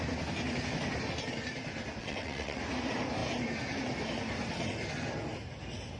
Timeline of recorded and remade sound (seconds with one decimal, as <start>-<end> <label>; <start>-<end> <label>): 0.0-2.0 recorded; 2.0-2.6 remade; 2.6-6.0 recorded